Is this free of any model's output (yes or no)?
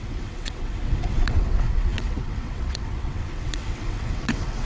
no